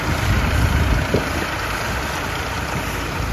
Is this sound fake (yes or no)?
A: no